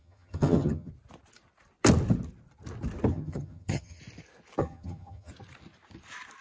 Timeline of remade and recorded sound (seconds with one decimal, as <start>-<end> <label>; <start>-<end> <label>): 0.0-0.9 remade; 0.9-3.1 recorded; 3.1-4.0 remade; 4.0-4.6 recorded; 4.6-5.3 remade; 5.3-6.4 recorded